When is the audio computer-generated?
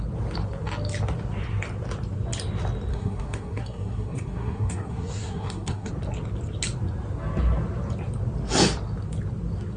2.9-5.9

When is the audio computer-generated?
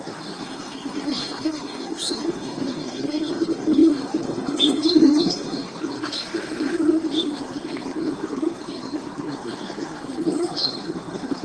0.0-11.4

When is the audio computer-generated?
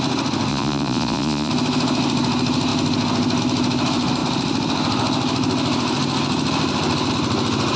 0.5-1.5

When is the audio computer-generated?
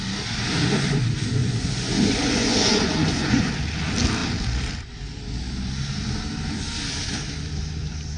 1.4-3.5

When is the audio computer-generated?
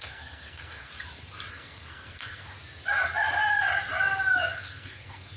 0.0-0.9; 1.5-2.5; 4.7-5.4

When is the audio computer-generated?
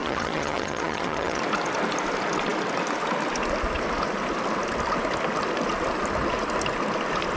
0.0-1.4